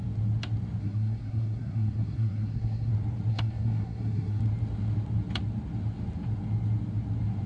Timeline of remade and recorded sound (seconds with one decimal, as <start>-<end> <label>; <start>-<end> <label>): 0.0-0.8 recorded; 0.8-2.9 remade; 2.9-3.3 recorded; 3.3-4.4 remade; 4.4-7.5 recorded